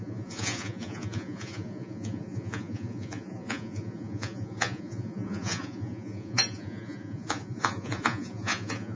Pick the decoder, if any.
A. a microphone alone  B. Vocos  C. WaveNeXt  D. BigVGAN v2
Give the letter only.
B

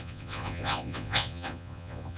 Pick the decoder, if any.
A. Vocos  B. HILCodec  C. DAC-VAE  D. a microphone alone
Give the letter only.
A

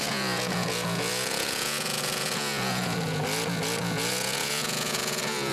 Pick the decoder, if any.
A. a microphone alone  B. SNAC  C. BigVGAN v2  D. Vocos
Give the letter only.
D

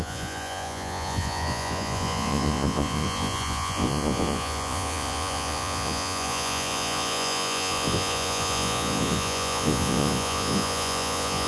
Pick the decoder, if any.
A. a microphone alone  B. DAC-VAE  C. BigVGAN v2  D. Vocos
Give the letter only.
D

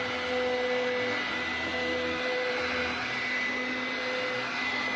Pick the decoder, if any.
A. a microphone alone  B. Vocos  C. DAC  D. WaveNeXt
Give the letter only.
A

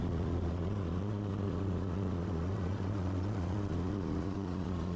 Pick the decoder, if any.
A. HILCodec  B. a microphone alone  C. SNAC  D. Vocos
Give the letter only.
D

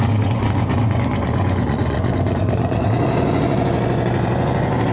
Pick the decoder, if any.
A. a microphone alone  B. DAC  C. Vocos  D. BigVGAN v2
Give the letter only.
C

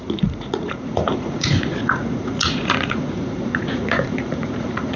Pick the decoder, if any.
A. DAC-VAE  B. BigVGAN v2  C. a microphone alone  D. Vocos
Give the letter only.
D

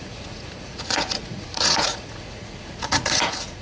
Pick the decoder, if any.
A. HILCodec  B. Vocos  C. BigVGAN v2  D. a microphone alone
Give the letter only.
B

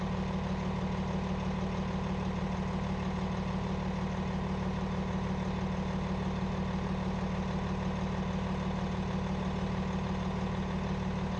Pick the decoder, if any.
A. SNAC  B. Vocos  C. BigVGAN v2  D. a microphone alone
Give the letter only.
D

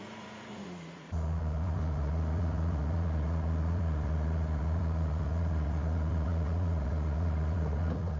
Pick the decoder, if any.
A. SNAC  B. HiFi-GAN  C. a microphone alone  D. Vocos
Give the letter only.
D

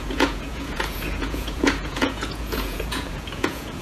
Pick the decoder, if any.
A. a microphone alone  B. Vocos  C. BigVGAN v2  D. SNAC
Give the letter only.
B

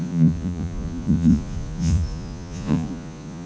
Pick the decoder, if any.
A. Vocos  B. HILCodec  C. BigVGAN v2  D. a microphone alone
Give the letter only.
A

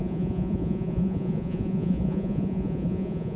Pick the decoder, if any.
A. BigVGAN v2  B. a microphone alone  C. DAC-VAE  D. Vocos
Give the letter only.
D